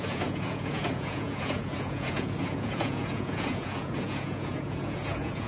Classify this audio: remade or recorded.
remade